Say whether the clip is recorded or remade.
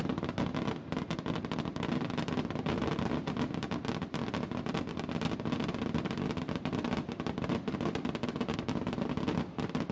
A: recorded